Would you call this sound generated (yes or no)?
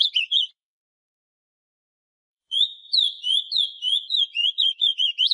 yes